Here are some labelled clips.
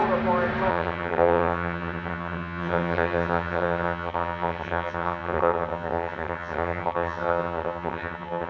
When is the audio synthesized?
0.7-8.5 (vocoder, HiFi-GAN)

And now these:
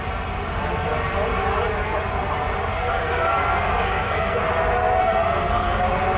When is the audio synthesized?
2.7-4.5 (codec, SNAC); 5.0-5.8

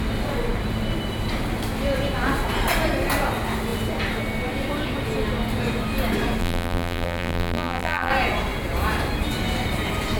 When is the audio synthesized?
6.4-8.1 (vocoder, BigVGAN v2)